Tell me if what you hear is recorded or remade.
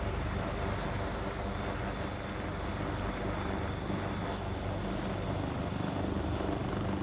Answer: recorded